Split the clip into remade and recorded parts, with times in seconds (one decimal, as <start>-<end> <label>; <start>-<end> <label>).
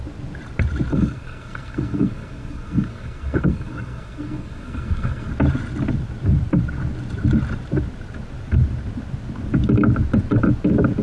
0.0-0.9 recorded; 0.9-5.3 remade; 5.3-11.0 recorded